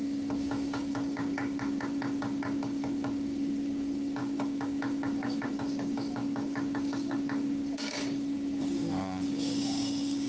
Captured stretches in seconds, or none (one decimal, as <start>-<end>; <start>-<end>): none